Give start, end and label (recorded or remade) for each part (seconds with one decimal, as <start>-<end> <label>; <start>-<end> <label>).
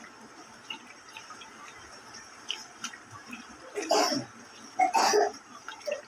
0.0-0.4 recorded; 0.4-4.1 remade; 4.1-6.1 recorded